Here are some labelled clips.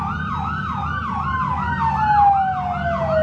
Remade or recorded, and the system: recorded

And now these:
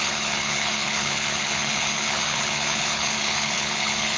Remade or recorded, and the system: remade, codec, HILCodec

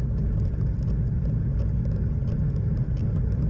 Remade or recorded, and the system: recorded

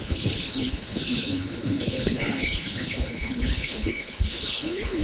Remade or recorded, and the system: remade, codec, HILCodec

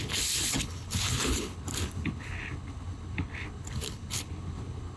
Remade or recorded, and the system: remade, codec, HILCodec